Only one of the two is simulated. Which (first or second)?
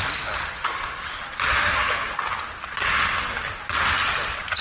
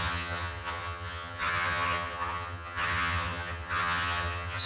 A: second